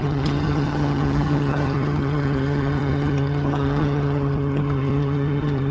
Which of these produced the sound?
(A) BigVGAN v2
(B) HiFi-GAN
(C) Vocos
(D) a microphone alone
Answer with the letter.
B